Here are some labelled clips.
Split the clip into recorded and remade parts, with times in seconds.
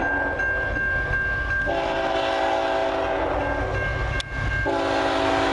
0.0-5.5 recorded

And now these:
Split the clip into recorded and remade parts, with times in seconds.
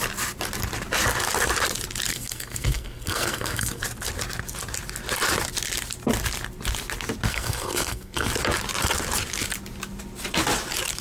0.0-2.1 recorded; 2.1-3.8 remade; 3.8-7.3 recorded; 7.3-8.3 remade; 8.3-11.0 recorded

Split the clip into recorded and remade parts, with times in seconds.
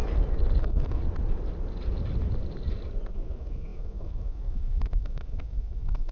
0.0-0.6 recorded; 0.6-1.0 remade; 1.0-3.1 recorded; 3.1-6.1 remade